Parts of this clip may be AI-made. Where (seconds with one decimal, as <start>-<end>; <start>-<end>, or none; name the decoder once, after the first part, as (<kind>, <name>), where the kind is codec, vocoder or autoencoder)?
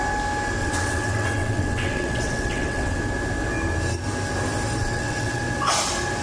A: 0.6-3.0 (vocoder, WaveNeXt); 4.8-5.4